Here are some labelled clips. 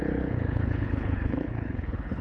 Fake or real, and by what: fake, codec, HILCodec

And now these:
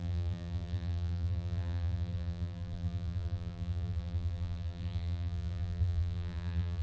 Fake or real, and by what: fake, vocoder, BigVGAN v2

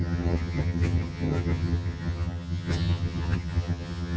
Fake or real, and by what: fake, vocoder, HiFi-GAN